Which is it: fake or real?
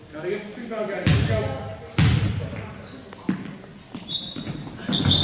real